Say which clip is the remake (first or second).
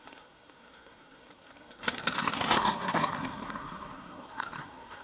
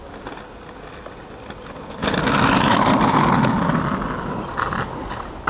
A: first